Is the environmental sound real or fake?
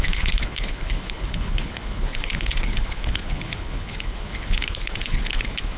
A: fake